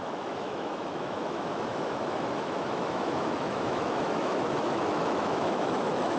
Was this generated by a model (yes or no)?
yes